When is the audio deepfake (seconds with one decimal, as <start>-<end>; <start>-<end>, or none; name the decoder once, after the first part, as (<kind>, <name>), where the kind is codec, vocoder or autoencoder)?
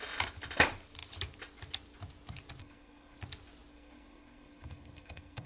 2.6-3.2 (codec, SNAC); 3.7-5.5